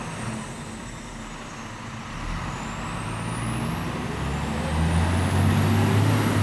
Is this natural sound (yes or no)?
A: yes